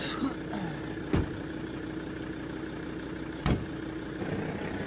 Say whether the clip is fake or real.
real